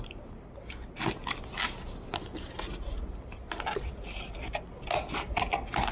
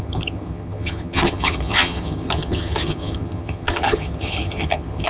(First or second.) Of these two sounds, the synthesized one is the second